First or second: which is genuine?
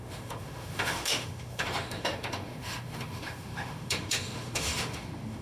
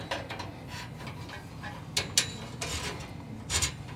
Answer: second